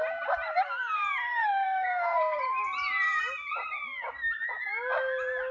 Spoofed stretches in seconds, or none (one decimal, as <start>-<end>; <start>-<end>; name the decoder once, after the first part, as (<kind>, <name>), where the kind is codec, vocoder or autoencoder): 1.4-2.4 (codec, SNAC)